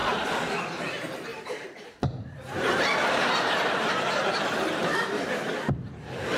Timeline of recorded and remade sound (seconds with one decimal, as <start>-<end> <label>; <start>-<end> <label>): 0.0-0.6 remade; 0.6-1.3 recorded; 1.3-3.9 remade; 3.9-4.8 recorded; 4.8-5.5 remade; 5.5-6.4 recorded